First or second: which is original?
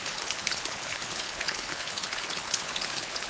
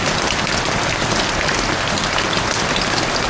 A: second